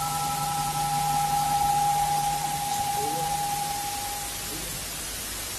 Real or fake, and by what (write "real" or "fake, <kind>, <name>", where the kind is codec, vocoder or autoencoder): real